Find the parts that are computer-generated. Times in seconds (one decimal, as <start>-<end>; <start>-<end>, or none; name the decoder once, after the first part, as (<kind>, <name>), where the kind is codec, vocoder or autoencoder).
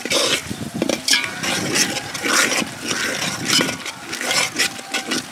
none